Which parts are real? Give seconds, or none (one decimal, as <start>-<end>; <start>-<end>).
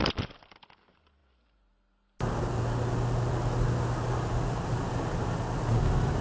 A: 0.0-6.2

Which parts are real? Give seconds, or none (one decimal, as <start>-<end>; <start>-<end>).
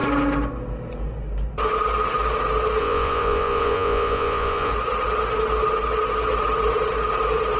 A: 0.0-2.8; 4.7-7.6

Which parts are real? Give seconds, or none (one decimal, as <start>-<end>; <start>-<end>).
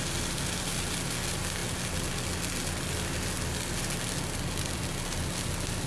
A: 0.0-5.9